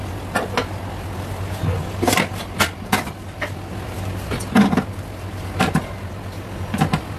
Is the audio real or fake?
real